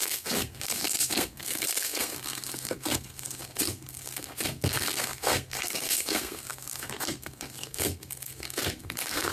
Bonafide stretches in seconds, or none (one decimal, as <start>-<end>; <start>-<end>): none